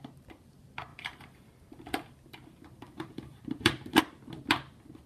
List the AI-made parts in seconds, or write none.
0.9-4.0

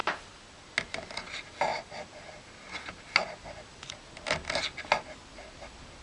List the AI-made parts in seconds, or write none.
0.9-1.7; 5.2-6.0